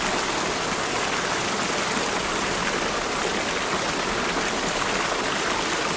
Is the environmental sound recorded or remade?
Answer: recorded